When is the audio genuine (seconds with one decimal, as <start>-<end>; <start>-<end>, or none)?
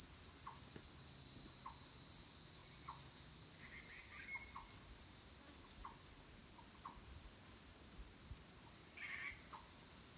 0.0-10.2